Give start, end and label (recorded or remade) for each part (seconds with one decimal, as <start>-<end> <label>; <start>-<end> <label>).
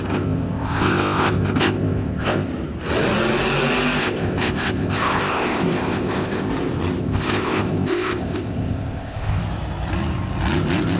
0.0-2.5 remade; 2.5-4.0 recorded; 4.0-6.5 remade; 6.5-7.0 recorded; 7.0-9.4 remade; 9.4-11.0 recorded